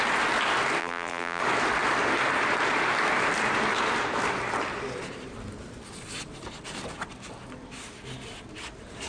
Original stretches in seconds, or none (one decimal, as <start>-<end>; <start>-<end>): 0.0-0.8; 1.4-9.1